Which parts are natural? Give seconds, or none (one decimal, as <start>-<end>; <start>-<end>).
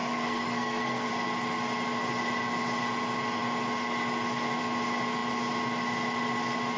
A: 1.1-6.8